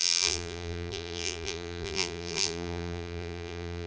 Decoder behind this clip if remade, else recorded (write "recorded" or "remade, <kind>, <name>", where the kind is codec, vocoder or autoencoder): remade, vocoder, BigVGAN v2